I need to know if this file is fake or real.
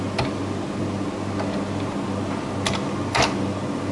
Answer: real